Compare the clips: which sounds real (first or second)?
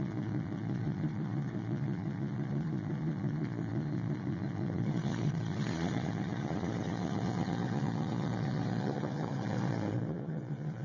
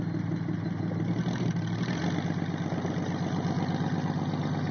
second